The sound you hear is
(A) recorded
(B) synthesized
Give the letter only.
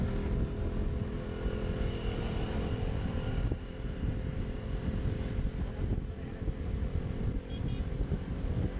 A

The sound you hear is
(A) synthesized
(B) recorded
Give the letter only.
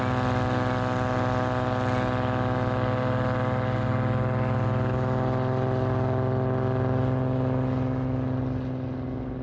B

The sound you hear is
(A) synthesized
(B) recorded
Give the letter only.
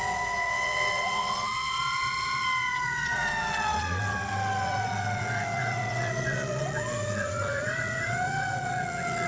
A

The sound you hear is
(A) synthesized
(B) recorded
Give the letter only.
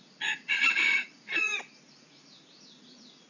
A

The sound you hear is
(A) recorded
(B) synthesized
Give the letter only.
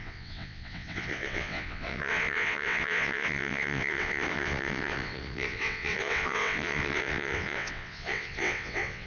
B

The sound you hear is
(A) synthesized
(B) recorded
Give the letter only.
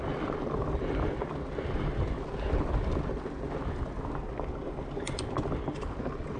B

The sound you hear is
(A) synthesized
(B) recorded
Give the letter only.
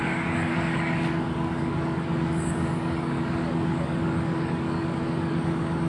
A